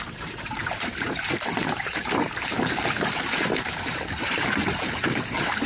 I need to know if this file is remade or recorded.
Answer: remade